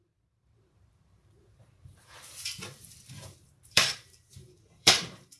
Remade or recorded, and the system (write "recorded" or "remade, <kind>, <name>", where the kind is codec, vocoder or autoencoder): remade, vocoder, BigVGAN v2